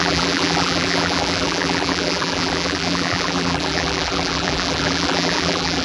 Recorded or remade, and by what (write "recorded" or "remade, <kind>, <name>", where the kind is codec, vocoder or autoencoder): remade, vocoder, BigVGAN v2